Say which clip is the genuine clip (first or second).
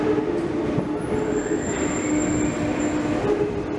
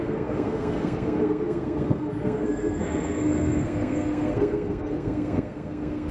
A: first